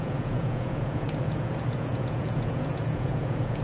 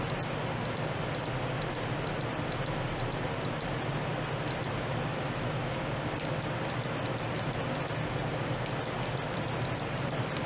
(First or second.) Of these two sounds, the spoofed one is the first